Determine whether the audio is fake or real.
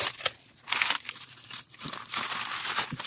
real